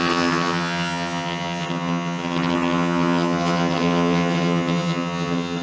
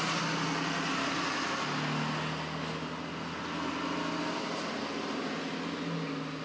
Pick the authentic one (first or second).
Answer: second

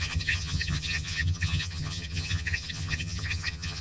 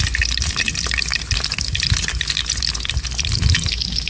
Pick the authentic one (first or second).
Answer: second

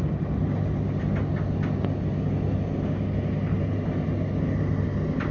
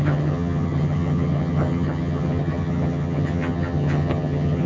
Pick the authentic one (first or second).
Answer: first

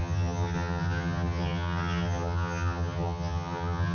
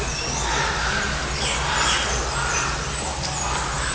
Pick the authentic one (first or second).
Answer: second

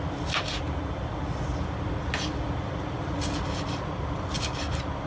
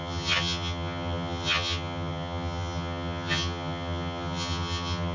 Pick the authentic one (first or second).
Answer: first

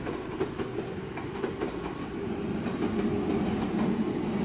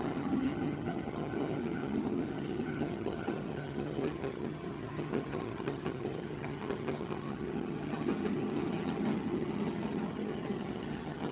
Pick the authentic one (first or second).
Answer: first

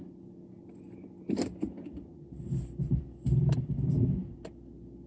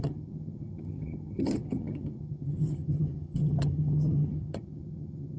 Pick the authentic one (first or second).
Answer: first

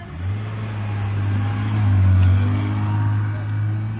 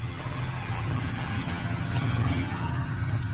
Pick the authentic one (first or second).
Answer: first